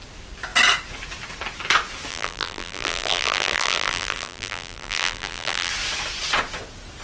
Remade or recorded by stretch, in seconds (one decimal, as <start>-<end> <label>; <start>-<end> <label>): 0.0-2.1 recorded; 2.1-5.7 remade; 5.7-7.0 recorded

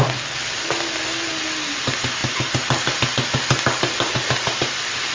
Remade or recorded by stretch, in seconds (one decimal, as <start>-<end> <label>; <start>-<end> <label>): 0.0-5.1 recorded

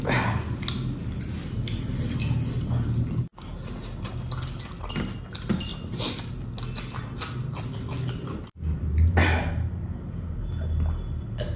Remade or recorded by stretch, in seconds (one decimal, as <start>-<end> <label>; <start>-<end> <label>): 0.0-11.6 recorded

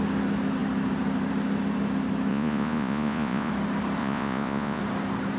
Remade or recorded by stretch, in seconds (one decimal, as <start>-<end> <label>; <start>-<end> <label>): 0.0-2.3 recorded; 2.3-3.5 remade; 3.5-4.0 recorded; 4.0-4.8 remade; 4.8-5.4 recorded